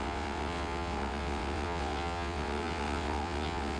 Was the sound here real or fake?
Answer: fake